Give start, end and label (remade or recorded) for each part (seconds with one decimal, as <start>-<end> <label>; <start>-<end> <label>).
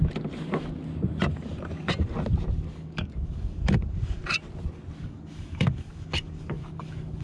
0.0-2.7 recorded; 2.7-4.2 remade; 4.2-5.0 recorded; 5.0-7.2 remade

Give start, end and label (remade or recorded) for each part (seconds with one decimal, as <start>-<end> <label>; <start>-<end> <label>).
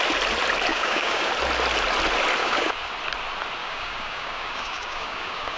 0.0-0.7 recorded; 0.7-1.3 remade; 1.3-2.4 recorded; 2.4-2.9 remade; 2.9-3.6 recorded; 3.6-5.6 remade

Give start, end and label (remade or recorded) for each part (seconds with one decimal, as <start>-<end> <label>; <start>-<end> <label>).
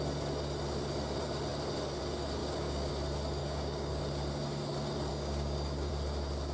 0.0-2.4 recorded; 2.4-2.9 remade; 2.9-3.4 recorded; 3.4-4.0 remade; 4.0-5.1 recorded; 5.1-5.9 remade; 5.9-6.5 recorded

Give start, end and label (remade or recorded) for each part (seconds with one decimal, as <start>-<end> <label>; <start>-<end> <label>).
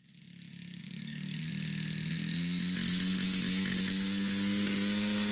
0.0-0.7 recorded; 0.7-1.5 remade; 1.5-5.3 recorded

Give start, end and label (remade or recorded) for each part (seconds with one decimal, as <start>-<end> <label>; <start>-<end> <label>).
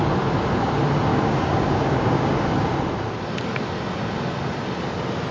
0.0-1.1 recorded; 1.1-2.3 remade; 2.3-5.3 recorded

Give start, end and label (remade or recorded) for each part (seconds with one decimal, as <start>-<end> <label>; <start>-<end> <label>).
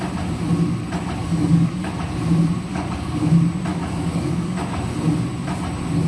0.0-1.2 recorded; 1.2-1.9 remade; 1.9-2.7 recorded; 2.7-3.3 remade; 3.3-3.7 recorded; 3.7-4.8 remade; 4.8-6.1 recorded